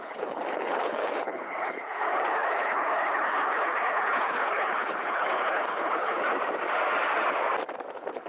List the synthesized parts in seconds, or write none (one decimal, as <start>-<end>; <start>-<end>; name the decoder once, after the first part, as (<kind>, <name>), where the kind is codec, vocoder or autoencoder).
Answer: 0.0-6.3 (codec, HILCodec); 7.9-8.3